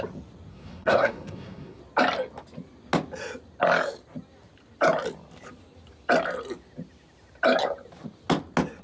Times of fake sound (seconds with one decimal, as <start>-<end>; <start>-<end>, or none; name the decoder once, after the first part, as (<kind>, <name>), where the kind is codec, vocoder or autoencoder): 0.5-1.8 (codec, SNAC)